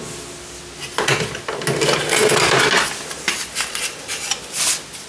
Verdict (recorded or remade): recorded